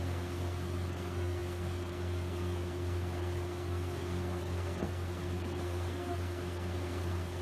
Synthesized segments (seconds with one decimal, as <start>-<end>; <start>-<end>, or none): 0.0-7.4

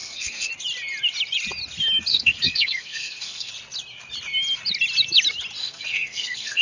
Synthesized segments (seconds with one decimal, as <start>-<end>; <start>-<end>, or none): 0.0-0.5; 2.1-3.5; 5.6-6.6

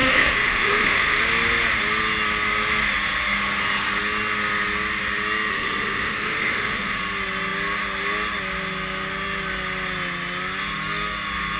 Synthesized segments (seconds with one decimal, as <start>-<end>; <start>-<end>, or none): 0.0-1.2; 5.5-7.0

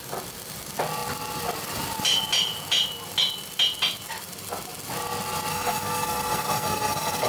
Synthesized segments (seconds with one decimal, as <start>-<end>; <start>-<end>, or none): 5.5-7.3

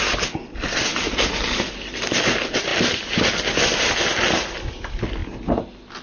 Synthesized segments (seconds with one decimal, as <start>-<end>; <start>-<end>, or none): none

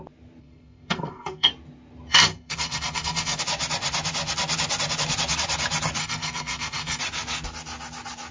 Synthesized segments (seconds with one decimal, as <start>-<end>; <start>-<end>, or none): 0.4-1.5; 2.1-3.4; 6.0-7.0

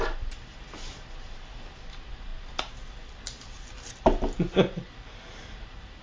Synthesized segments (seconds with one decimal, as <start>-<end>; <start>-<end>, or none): none

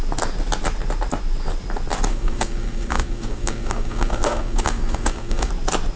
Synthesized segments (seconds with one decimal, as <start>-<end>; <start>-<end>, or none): 2.1-5.5